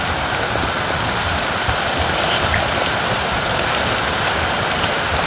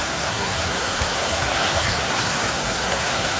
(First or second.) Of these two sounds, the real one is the first